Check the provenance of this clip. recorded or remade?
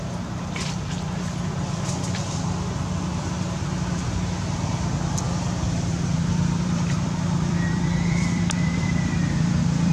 remade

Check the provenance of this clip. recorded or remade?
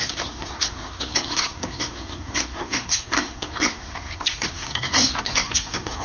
remade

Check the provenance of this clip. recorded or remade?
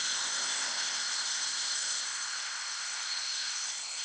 remade